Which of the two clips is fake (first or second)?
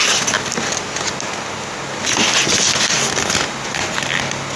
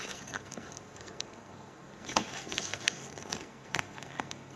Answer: second